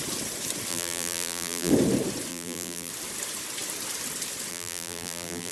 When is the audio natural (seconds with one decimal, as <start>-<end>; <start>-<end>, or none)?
0.0-0.7; 1.7-2.3; 2.9-4.5